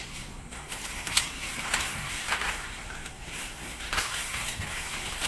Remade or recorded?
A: remade